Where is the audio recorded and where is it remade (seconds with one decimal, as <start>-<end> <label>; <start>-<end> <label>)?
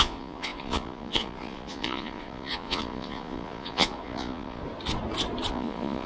0.0-4.6 remade; 4.6-5.5 recorded; 5.5-6.1 remade